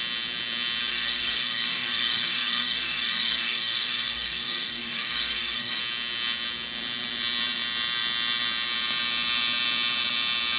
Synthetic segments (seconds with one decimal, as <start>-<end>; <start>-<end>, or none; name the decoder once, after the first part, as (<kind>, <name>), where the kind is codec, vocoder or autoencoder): 0.9-5.8 (codec, SNAC)